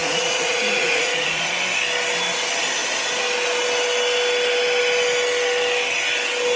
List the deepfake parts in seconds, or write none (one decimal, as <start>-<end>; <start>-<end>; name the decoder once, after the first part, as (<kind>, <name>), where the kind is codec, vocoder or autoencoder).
0.0-1.5 (vocoder, Vocos)